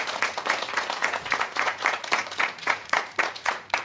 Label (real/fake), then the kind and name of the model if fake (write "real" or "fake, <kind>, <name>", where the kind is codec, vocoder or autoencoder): fake, vocoder, Vocos